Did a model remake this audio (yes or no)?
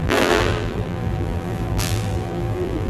yes